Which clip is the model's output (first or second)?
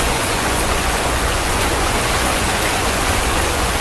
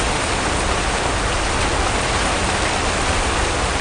first